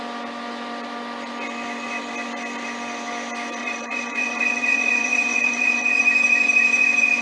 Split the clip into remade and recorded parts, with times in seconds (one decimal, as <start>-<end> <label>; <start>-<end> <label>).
0.0-3.6 recorded; 3.6-6.0 remade; 6.0-7.2 recorded